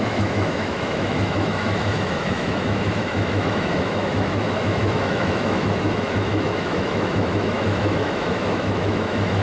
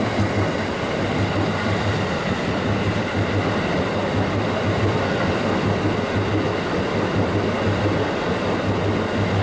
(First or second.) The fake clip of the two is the first